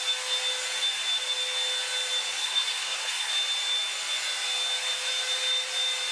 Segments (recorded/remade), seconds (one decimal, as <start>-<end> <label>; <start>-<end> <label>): 0.0-2.4 recorded; 2.4-3.3 remade; 3.3-6.1 recorded

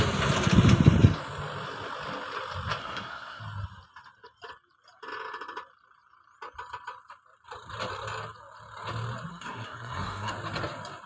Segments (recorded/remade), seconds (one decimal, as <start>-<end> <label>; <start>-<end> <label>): 0.0-2.8 recorded; 2.8-3.4 remade; 3.4-9.3 recorded; 9.3-10.3 remade; 10.3-11.1 recorded

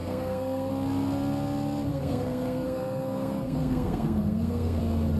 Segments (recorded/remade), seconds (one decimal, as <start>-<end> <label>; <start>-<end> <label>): 0.0-0.7 remade; 0.7-1.9 recorded; 1.9-4.8 remade; 4.8-5.2 recorded

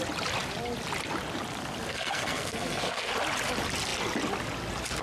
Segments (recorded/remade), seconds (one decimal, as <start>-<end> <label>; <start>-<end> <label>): 0.0-1.9 recorded; 1.9-3.1 remade; 3.1-5.0 recorded